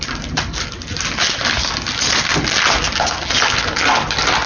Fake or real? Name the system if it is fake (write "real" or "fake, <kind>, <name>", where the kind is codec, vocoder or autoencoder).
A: real